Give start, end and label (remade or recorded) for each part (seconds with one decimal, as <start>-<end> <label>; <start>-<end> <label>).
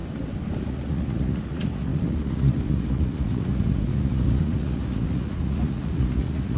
0.0-0.6 recorded; 0.6-6.6 remade